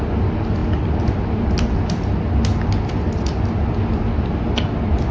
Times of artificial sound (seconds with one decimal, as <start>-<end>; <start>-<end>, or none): none

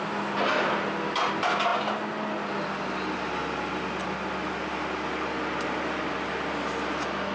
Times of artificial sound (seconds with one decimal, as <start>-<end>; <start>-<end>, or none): none

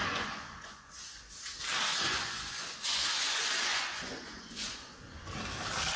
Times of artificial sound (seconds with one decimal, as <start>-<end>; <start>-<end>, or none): 0.0-1.3; 1.9-5.3

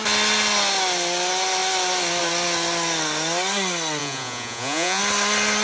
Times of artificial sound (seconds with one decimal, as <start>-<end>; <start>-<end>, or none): 4.0-5.0

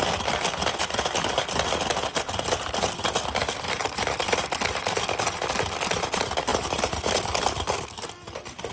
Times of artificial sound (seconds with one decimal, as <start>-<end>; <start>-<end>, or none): none